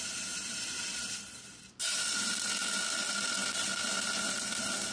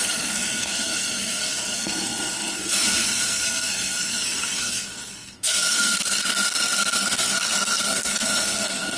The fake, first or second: second